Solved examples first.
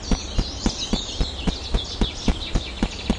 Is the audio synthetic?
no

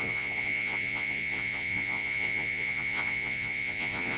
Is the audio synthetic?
yes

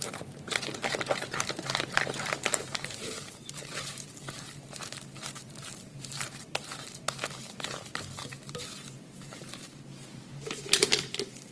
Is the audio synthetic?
yes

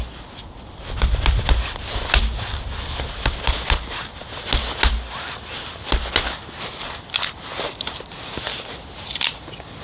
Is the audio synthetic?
no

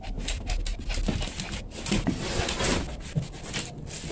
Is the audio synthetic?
no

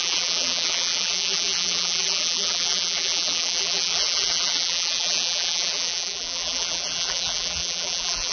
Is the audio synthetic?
yes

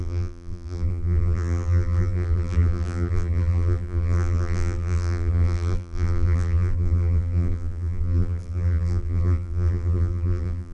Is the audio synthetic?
yes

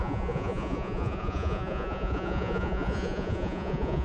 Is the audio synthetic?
yes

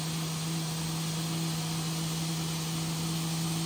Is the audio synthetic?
no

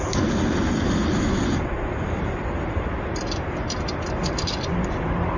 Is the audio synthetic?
no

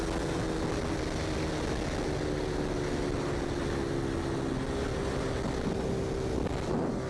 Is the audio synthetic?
no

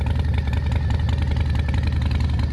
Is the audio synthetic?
no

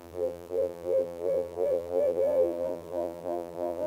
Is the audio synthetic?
yes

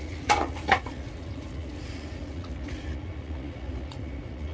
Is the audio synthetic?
yes